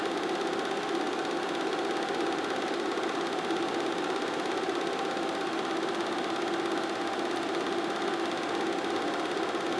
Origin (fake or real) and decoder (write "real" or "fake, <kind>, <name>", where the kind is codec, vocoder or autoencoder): real